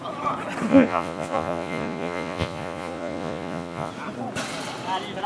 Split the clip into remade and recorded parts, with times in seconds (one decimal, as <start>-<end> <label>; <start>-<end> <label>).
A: 0.0-0.7 recorded; 0.7-3.9 remade; 3.9-5.3 recorded